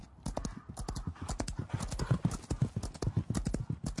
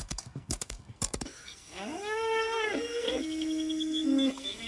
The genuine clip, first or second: first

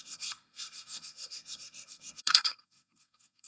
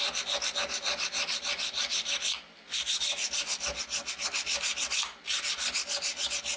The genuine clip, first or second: second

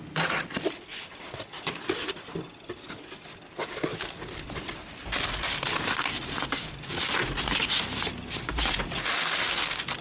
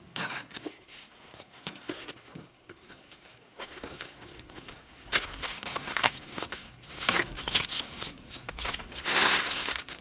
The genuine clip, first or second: first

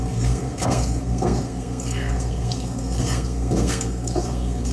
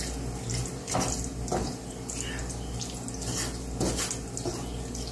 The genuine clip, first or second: second